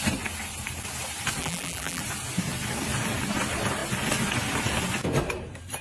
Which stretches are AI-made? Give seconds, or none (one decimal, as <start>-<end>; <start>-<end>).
1.4-2.0

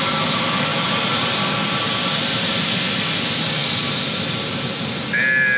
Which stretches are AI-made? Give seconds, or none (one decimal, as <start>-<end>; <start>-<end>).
0.7-1.3

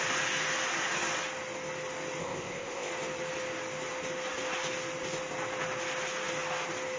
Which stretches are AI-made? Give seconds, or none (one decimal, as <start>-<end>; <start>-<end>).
2.2-2.9

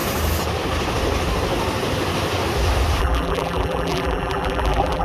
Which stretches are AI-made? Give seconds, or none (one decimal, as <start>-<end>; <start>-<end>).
3.0-5.0

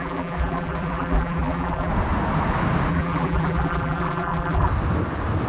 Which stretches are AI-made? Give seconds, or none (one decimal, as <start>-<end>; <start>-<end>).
0.0-1.9; 2.9-4.7

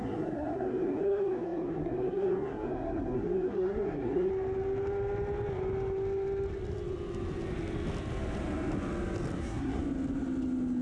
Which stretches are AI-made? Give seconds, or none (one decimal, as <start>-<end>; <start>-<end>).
0.0-4.3; 9.4-9.8

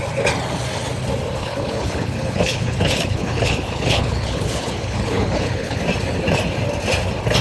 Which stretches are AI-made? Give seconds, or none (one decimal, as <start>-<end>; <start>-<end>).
1.4-5.8